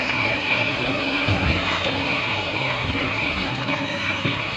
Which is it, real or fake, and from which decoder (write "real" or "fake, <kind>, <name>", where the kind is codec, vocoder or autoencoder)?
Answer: fake, codec, SNAC